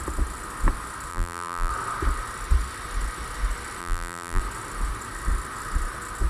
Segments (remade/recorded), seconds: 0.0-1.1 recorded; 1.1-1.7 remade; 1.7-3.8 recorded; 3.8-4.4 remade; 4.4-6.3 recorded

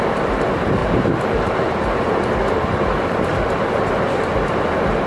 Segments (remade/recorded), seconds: 0.0-0.8 recorded; 0.8-3.9 remade; 3.9-5.1 recorded

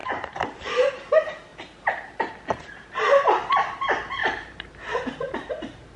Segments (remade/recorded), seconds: 0.0-1.0 remade; 1.0-1.5 recorded; 1.5-2.3 remade; 2.3-4.2 recorded; 4.2-6.0 remade

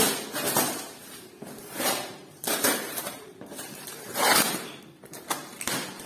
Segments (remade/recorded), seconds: 0.0-1.0 recorded; 1.0-4.7 remade; 4.7-6.1 recorded

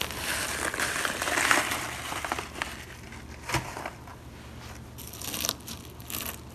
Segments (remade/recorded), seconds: 0.0-6.5 recorded

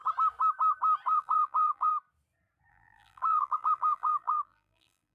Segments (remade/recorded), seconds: 0.0-1.1 recorded; 1.1-1.9 remade; 1.9-2.7 recorded; 2.7-5.1 remade